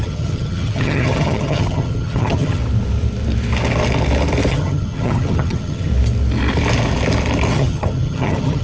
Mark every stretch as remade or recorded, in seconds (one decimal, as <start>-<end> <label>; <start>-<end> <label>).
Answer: 0.0-2.6 remade; 2.6-4.5 recorded; 4.5-5.9 remade; 5.9-7.5 recorded; 7.5-8.6 remade